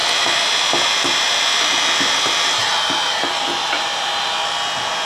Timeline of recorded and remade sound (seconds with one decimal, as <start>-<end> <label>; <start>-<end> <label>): 0.0-3.6 recorded; 3.6-4.3 remade; 4.3-5.1 recorded